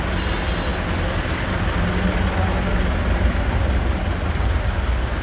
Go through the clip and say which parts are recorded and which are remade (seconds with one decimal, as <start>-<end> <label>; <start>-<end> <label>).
0.0-5.2 recorded

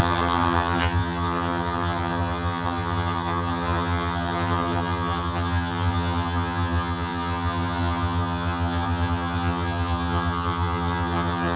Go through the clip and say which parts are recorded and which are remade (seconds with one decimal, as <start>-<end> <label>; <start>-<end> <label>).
0.0-11.6 remade

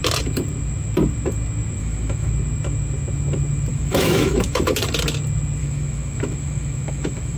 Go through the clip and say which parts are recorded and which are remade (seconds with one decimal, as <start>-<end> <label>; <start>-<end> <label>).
0.0-1.8 recorded; 1.8-2.3 remade; 2.3-3.7 recorded; 3.7-4.8 remade; 4.8-5.6 recorded; 5.6-7.4 remade

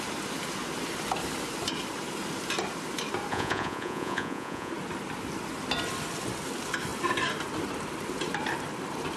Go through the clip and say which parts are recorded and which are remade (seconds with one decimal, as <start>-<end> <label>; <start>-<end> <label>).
0.0-3.3 recorded; 3.3-4.7 remade; 4.7-9.2 recorded

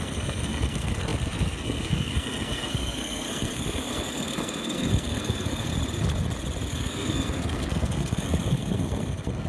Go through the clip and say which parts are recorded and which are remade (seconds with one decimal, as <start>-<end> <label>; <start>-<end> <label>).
0.0-5.7 remade; 5.7-6.7 recorded; 6.7-9.5 remade

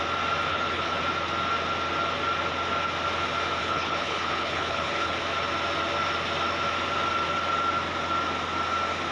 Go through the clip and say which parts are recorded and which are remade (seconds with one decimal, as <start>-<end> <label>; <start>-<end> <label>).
0.0-0.5 recorded; 0.5-1.0 remade; 1.0-3.6 recorded; 3.6-5.2 remade; 5.2-9.1 recorded

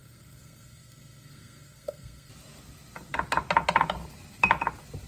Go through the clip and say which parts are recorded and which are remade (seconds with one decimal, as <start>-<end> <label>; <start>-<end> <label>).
0.0-2.3 remade; 2.3-5.1 recorded